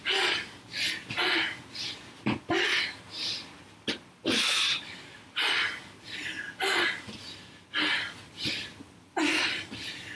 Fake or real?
real